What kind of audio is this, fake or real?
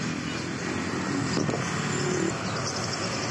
real